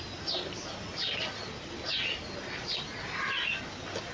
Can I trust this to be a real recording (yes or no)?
yes